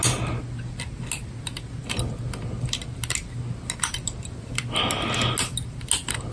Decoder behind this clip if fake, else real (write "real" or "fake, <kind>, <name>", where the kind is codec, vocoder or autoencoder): real